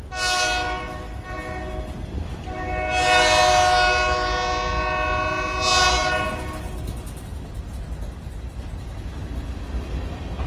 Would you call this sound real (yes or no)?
yes